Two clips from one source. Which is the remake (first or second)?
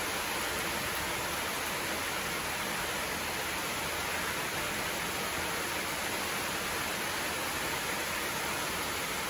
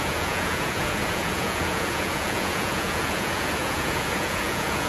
second